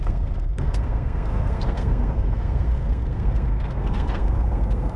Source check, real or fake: fake